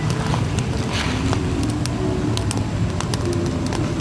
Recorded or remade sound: recorded